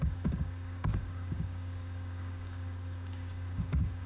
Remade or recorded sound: remade